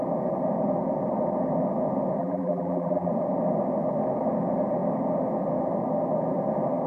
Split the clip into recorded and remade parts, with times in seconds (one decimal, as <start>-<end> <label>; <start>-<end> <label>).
0.0-2.2 recorded; 2.2-3.1 remade; 3.1-6.9 recorded